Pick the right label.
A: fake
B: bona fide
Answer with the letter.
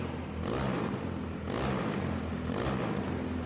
B